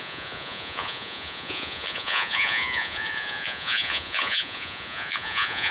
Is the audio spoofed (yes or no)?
yes